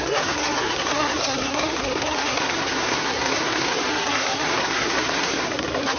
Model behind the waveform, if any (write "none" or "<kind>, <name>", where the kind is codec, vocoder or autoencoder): codec, SNAC